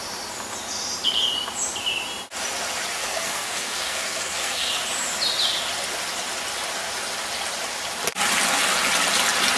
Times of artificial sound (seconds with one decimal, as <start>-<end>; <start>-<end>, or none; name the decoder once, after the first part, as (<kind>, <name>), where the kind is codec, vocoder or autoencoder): 3.0-4.7 (codec, SNAC)